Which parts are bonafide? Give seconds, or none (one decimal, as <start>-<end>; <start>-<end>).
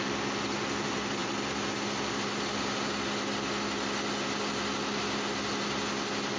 0.0-6.4